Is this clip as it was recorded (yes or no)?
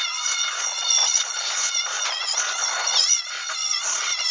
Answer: no